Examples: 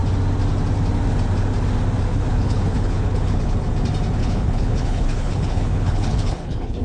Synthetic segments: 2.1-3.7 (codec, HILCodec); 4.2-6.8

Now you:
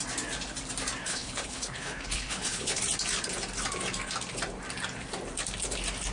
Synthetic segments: 1.0-2.8 (codec, HILCodec)

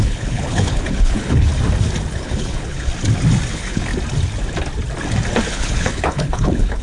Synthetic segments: 0.0-1.5 (codec, HILCodec); 2.1-2.9; 3.5-3.9; 5.5-6.8

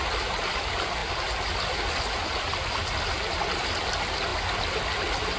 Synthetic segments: none